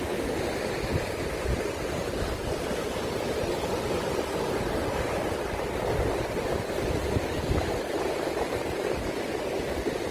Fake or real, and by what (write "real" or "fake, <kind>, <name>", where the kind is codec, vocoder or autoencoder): real